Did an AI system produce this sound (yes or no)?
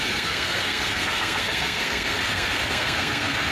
yes